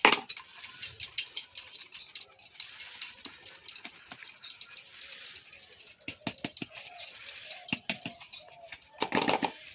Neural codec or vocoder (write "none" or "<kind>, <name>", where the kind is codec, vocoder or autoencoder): none